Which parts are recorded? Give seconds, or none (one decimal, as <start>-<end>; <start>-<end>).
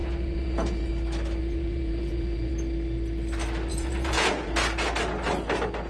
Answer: 0.9-1.4; 2.5-3.7; 4.5-5.9